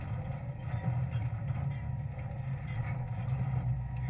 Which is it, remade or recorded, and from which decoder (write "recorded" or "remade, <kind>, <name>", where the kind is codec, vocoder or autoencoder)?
recorded